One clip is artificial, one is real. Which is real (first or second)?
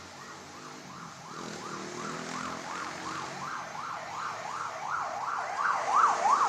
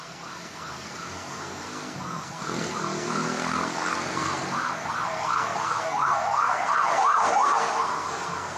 first